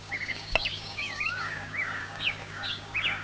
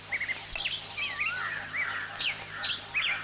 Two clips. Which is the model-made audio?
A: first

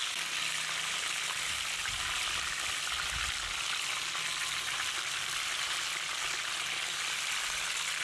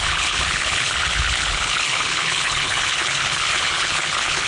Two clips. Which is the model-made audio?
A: second